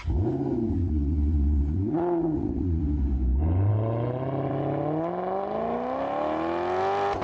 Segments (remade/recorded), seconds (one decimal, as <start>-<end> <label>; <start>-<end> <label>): 0.0-0.8 recorded; 0.8-2.8 remade; 2.8-7.2 recorded